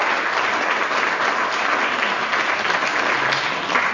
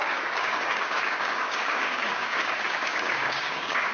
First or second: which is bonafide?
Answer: first